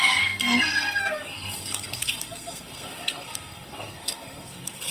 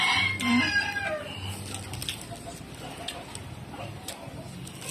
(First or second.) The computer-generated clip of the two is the first